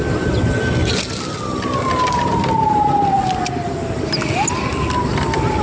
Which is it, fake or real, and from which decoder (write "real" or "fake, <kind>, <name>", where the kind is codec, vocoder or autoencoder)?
real